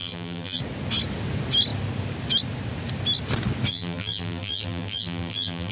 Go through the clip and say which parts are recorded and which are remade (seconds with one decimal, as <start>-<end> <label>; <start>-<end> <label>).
0.0-0.6 remade; 0.6-3.7 recorded; 3.7-5.7 remade